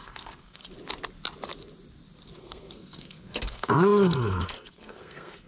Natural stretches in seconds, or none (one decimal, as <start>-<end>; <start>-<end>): 0.6-2.4